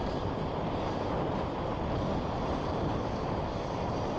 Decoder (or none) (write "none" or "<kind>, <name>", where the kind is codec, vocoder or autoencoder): none